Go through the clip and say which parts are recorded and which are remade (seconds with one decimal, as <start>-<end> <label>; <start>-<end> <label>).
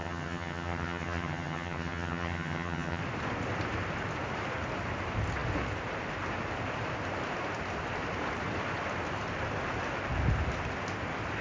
0.0-3.0 remade; 3.0-11.4 recorded